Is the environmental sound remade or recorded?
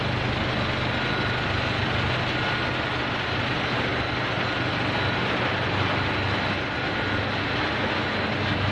recorded